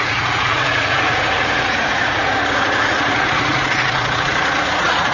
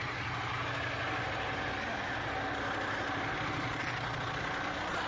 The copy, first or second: first